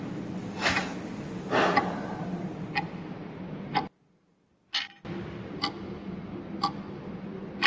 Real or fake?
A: real